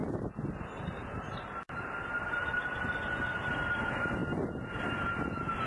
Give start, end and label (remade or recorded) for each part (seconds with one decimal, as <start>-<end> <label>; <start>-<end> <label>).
0.0-3.4 remade; 3.4-5.7 recorded